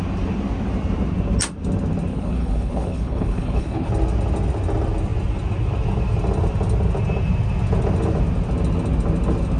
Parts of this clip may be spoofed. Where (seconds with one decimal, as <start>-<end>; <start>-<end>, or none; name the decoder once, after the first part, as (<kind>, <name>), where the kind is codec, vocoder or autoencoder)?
2.1-3.9 (codec, HILCodec)